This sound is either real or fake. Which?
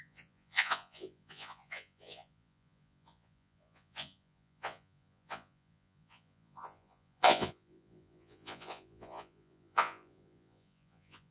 fake